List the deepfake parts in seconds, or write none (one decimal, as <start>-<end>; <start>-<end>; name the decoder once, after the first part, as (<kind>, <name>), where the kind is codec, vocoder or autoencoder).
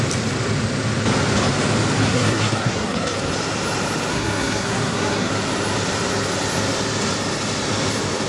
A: 2.1-3.2 (codec, SNAC); 4.1-5.3